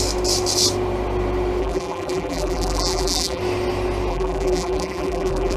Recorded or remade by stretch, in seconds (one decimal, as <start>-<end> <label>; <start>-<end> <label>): 0.0-1.6 recorded; 1.6-3.4 remade; 3.4-4.1 recorded; 4.1-5.6 remade